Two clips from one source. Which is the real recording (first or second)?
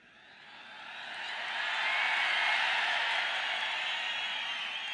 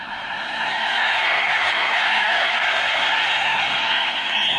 first